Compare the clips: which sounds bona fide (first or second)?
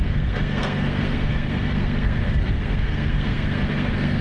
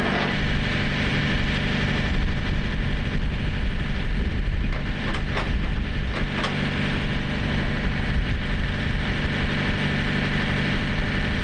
second